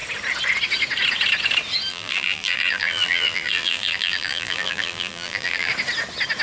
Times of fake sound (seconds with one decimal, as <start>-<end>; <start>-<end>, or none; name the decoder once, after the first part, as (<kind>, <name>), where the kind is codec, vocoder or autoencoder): 1.9-5.7 (vocoder, BigVGAN v2)